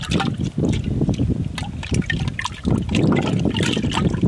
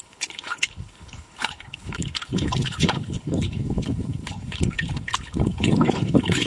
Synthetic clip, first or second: second